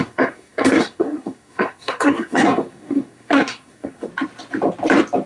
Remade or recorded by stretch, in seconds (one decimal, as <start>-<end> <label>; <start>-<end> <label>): 0.0-4.1 remade; 4.1-5.3 recorded